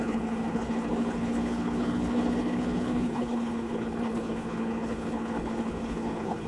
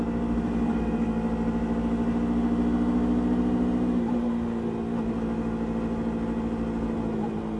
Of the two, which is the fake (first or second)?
first